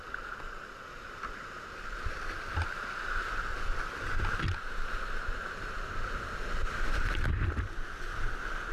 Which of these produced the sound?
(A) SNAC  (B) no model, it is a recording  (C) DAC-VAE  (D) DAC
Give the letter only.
B